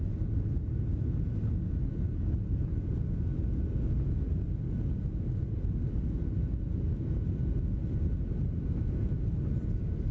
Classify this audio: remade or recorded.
recorded